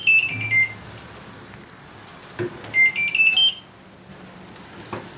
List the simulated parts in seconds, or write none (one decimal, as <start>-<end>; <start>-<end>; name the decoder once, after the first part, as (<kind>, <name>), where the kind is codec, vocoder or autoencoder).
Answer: none